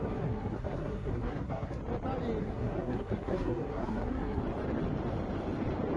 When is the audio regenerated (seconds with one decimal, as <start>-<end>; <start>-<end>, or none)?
0.0-1.8; 2.4-4.4